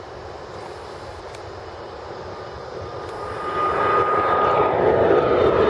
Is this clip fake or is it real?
real